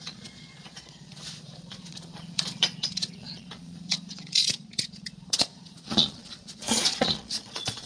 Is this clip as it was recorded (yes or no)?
no